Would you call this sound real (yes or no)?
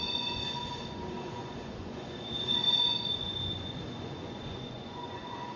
no